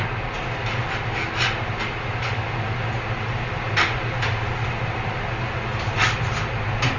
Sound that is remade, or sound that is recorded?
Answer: recorded